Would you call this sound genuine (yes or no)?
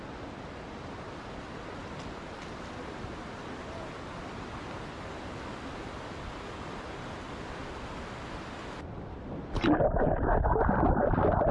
yes